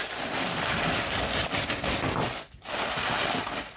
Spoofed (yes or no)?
no